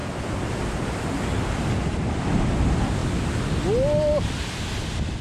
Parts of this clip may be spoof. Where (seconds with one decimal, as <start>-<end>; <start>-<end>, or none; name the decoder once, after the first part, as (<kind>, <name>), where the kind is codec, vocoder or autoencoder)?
none